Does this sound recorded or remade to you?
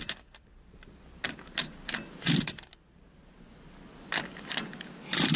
recorded